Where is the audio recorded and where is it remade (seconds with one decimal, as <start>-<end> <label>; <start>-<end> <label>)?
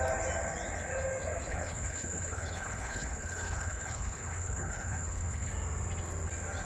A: 0.0-1.5 recorded; 1.5-5.5 remade; 5.5-6.6 recorded